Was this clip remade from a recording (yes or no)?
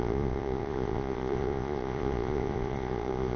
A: yes